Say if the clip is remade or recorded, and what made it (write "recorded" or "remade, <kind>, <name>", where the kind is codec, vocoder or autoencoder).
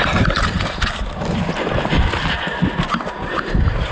recorded